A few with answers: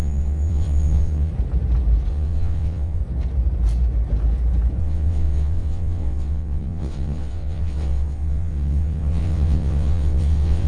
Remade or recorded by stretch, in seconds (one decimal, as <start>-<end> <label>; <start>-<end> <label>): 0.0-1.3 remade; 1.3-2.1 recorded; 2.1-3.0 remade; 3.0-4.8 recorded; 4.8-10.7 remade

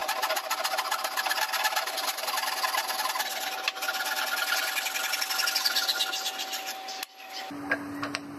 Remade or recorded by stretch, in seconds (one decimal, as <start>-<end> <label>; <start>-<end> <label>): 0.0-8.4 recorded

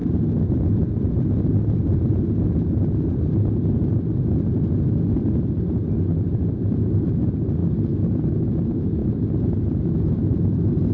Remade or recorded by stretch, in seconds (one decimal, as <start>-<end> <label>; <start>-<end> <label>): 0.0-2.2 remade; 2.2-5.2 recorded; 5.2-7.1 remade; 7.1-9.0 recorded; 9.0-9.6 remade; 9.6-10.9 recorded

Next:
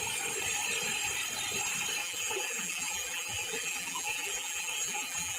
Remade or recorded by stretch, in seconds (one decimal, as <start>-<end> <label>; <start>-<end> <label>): 0.0-2.0 recorded; 2.0-5.4 remade

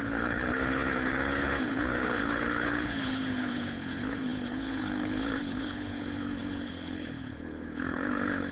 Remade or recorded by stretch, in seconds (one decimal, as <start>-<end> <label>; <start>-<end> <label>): 0.0-8.5 remade